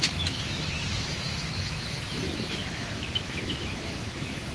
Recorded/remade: remade